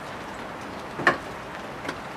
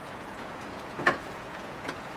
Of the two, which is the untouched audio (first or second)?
first